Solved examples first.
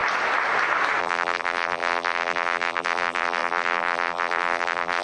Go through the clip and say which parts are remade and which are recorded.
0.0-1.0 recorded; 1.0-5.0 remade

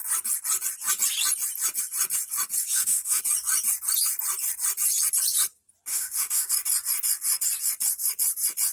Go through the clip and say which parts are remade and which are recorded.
0.0-2.6 recorded; 2.6-3.2 remade; 3.2-5.9 recorded; 5.9-6.5 remade; 6.5-8.7 recorded

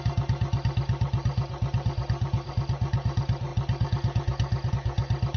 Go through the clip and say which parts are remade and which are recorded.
0.0-5.4 recorded